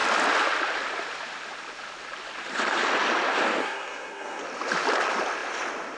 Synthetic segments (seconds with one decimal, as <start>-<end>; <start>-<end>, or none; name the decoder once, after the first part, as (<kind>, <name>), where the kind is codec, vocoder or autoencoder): 3.6-4.4 (codec, SNAC)